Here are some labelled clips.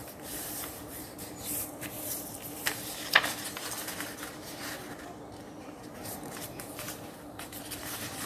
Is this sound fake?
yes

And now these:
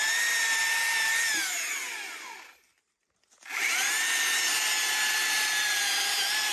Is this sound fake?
no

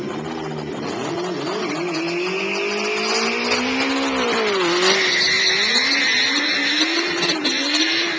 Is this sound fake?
no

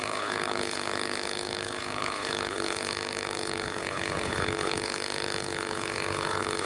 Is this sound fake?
yes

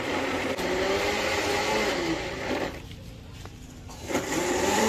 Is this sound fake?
yes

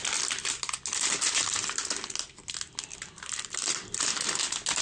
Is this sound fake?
no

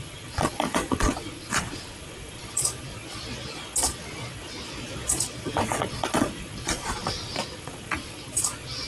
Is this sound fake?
yes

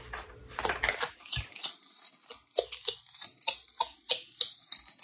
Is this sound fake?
no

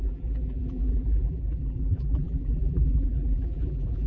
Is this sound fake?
yes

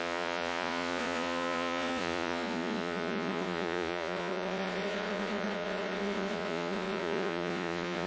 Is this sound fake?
yes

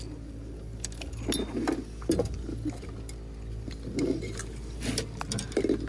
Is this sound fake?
no